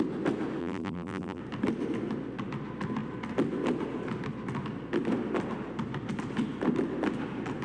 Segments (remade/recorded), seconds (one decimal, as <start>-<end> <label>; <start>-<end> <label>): 0.0-0.6 recorded; 0.6-1.4 remade; 1.4-7.6 recorded

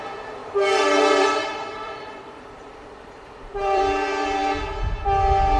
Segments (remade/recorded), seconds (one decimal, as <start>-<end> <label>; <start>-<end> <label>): 0.0-0.4 recorded; 0.4-3.8 remade; 3.8-5.6 recorded